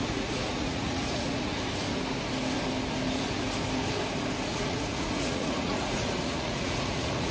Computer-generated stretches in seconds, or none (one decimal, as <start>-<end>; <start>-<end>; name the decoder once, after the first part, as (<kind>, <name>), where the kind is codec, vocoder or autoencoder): 0.0-1.5 (vocoder, Vocos); 4.5-7.3

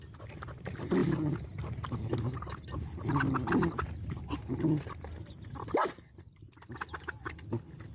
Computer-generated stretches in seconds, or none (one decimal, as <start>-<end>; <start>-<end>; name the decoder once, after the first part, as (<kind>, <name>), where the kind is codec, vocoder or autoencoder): none